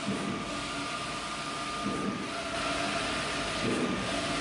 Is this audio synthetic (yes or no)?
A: no